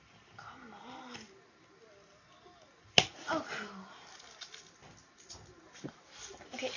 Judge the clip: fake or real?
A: real